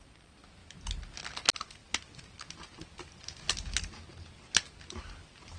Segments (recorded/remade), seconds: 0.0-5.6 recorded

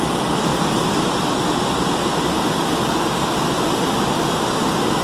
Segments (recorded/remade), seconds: 0.0-0.5 recorded; 0.5-2.7 remade; 2.7-5.0 recorded

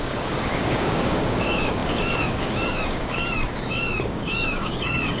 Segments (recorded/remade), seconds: 0.0-5.2 remade